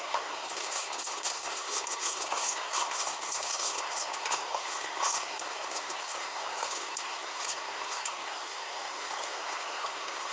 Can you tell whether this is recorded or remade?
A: remade